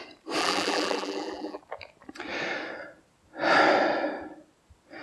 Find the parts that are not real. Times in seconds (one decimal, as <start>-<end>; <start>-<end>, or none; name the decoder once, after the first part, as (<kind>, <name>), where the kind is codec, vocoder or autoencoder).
0.4-1.6 (vocoder, BigVGAN v2)